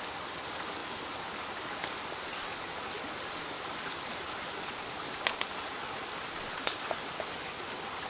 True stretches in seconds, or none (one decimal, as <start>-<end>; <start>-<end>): 0.0-8.1